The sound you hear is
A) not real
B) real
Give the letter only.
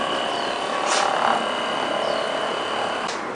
B